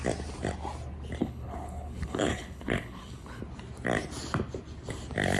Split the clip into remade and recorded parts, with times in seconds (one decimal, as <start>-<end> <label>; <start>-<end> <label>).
0.0-1.2 recorded; 1.2-3.4 remade; 3.4-5.4 recorded